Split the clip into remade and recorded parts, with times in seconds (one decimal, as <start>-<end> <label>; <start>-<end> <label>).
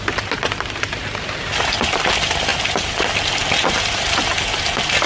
0.0-5.1 recorded